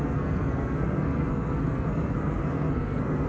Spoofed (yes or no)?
yes